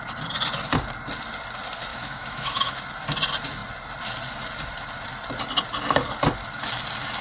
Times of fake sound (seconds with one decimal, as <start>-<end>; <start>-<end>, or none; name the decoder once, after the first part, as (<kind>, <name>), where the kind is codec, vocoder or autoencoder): 1.9-2.8 (autoencoder, DAC-VAE)